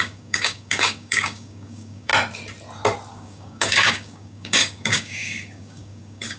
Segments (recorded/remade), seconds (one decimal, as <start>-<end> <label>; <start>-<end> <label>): 0.0-2.1 remade; 2.1-3.1 recorded; 3.1-6.4 remade